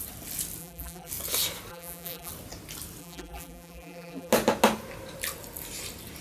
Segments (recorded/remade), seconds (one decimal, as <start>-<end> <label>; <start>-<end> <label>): 0.0-0.6 recorded; 0.6-1.1 remade; 1.1-1.7 recorded; 1.7-2.3 remade; 2.3-3.0 recorded; 3.0-4.3 remade; 4.3-6.2 recorded